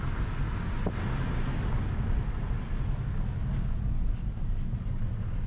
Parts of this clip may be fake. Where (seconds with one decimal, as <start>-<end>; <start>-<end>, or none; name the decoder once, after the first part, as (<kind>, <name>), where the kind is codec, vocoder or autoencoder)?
none